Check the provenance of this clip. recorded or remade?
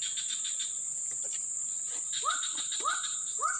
recorded